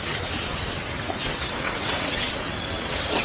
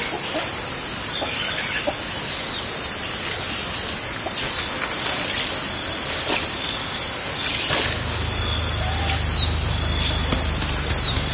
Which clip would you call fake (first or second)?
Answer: first